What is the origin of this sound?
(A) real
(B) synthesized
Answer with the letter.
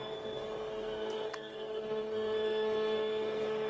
B